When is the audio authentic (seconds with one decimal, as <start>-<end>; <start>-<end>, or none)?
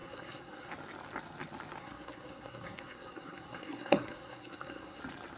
0.7-1.8; 5.0-5.4